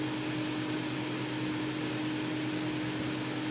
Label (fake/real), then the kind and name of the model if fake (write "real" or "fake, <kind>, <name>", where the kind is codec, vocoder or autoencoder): real